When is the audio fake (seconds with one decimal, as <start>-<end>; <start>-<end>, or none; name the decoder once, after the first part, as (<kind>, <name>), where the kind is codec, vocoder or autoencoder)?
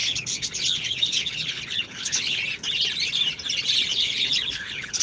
0.0-2.4 (codec, HILCodec); 3.9-5.0